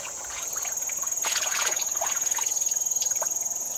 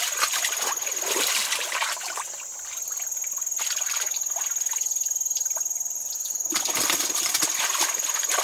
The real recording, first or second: second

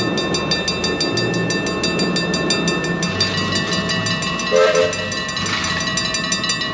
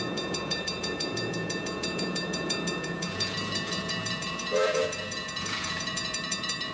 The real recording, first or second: first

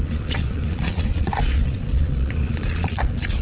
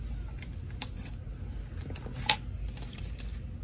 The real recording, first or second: second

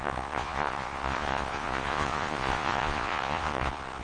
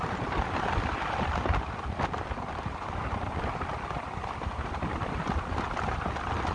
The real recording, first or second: second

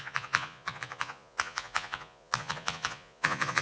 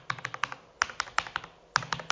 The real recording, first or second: second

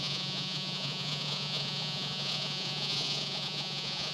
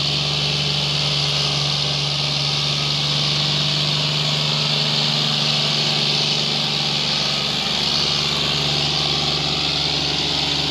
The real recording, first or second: second